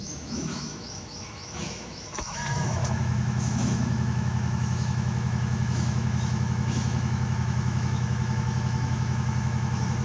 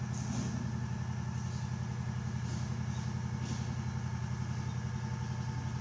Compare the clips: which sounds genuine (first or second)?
second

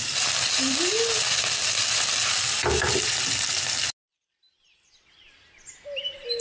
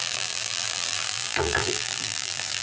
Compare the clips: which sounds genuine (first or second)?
first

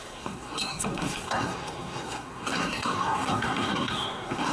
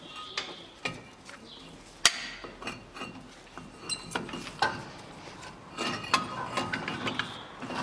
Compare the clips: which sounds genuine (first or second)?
second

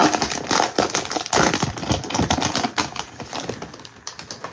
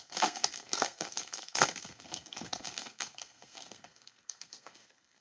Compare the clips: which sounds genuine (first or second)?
first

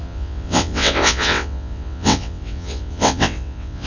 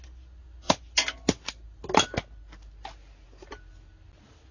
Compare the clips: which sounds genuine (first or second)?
second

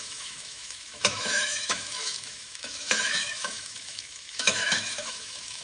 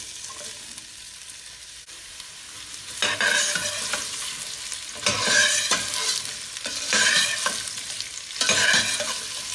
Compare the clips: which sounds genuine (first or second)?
second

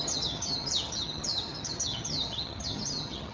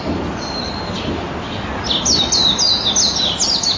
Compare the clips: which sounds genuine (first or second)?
second